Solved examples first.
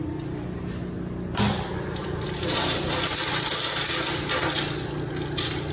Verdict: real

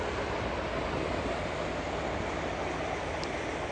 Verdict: real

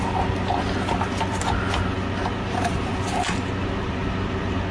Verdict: real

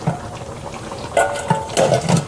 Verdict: real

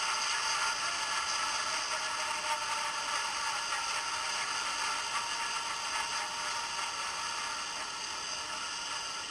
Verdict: real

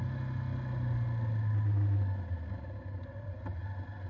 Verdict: real